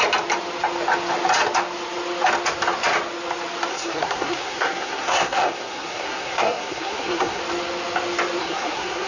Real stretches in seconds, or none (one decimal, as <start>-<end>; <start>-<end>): 0.0-3.7; 7.4-8.4